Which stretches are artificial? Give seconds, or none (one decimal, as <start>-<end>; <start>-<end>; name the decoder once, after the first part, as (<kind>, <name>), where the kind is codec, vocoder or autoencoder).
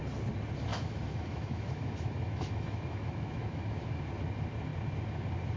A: 0.7-4.1 (autoencoder, DAC-VAE)